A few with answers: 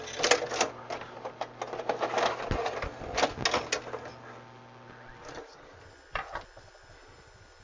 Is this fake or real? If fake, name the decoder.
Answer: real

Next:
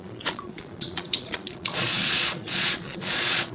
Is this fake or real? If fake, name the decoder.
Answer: fake, vocoder, Vocos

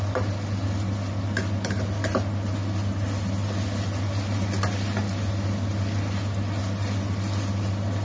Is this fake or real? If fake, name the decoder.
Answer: real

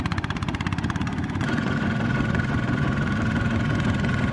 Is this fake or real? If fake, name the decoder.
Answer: fake, vocoder, Vocos